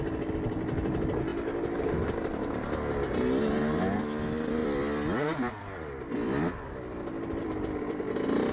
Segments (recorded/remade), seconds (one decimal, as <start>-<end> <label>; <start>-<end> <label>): 0.0-1.3 recorded; 1.3-1.9 remade; 1.9-4.6 recorded; 4.6-8.1 remade; 8.1-8.5 recorded